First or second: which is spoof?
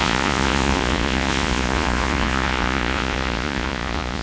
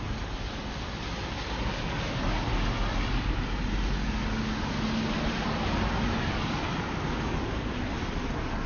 first